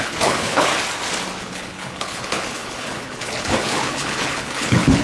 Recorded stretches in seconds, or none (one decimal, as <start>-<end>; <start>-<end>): 0.7-1.4